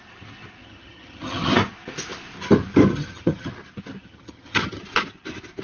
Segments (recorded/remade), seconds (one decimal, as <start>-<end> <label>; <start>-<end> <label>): 0.0-0.6 recorded; 0.6-1.5 remade; 1.5-2.9 recorded; 2.9-3.5 remade; 3.5-4.0 recorded; 4.0-4.8 remade; 4.8-5.6 recorded